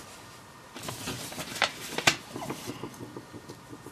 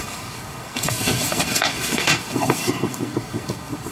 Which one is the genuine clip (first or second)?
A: first